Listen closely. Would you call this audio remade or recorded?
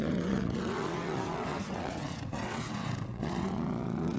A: remade